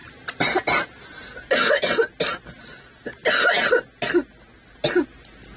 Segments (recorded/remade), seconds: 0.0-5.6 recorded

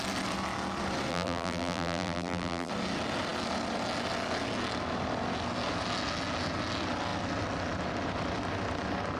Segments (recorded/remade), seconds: 0.0-1.1 recorded; 1.1-2.7 remade; 2.7-9.2 recorded

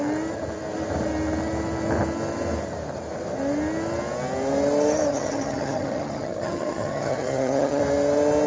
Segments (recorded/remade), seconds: 0.0-5.1 recorded; 5.1-7.8 remade; 7.8-8.5 recorded

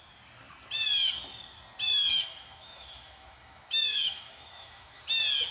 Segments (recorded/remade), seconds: 0.0-1.9 recorded; 1.9-5.0 remade; 5.0-5.5 recorded

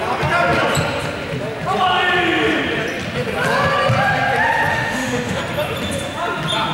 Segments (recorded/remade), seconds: 0.0-4.7 recorded; 4.7-5.4 remade; 5.4-6.7 recorded

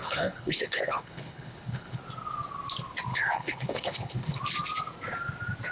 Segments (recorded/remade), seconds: 0.0-2.0 remade; 2.0-3.1 recorded; 3.1-4.4 remade; 4.4-5.7 recorded